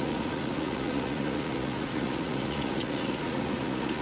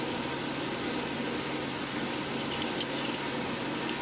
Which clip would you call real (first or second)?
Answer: second